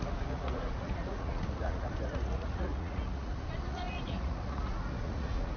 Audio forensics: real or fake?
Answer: fake